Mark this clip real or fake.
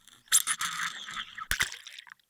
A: real